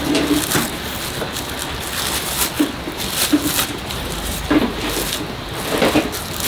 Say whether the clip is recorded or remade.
recorded